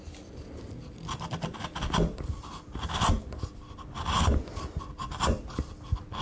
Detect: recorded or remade recorded